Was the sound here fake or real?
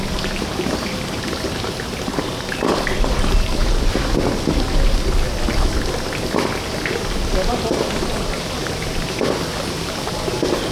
real